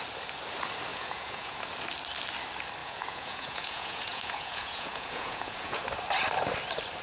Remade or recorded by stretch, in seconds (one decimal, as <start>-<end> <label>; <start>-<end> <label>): 0.0-0.9 recorded; 0.9-1.6 remade; 1.6-2.8 recorded; 2.8-5.8 remade; 5.8-7.0 recorded